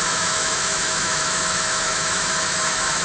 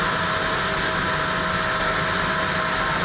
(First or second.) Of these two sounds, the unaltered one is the second